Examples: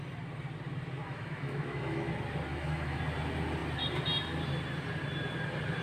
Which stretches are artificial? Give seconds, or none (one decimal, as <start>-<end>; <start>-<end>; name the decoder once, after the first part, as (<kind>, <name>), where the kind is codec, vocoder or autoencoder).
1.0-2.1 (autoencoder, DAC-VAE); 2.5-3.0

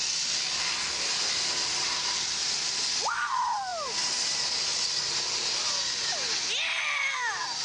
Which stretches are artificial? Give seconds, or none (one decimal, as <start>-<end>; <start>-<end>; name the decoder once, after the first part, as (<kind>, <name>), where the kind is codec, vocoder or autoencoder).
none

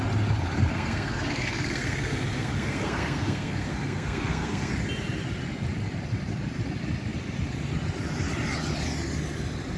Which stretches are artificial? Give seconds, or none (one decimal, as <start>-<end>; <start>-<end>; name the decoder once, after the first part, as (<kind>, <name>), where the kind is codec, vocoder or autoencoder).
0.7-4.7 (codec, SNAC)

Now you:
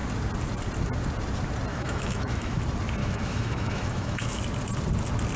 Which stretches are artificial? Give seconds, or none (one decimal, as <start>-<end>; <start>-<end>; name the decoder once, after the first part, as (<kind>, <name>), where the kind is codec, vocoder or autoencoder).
1.7-2.6 (autoencoder, DAC-VAE); 3.0-4.4

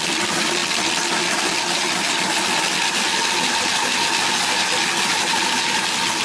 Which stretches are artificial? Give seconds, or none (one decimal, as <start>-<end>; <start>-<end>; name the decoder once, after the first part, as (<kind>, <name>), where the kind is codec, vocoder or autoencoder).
none

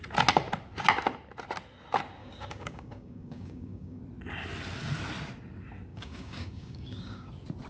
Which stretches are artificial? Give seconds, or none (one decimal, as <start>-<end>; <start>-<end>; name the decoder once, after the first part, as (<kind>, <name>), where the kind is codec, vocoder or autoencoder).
2.2-4.0 (codec, DAC); 5.9-7.3

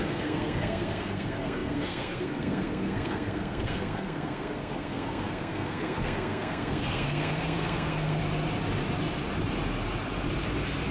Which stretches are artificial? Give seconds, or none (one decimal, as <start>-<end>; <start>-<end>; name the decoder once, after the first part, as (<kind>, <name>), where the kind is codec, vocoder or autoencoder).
0.0-8.2 (codec, SNAC)

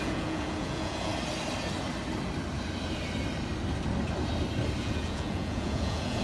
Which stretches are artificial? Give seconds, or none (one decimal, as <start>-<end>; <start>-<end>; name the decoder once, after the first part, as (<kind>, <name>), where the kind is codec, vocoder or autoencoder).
0.0-1.1 (vocoder, Vocos); 4.8-6.2